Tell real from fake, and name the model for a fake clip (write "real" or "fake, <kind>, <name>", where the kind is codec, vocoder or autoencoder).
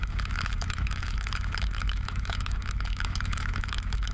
fake, autoencoder, DAC-VAE